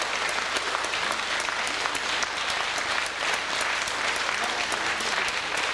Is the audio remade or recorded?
recorded